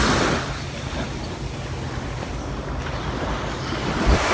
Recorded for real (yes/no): yes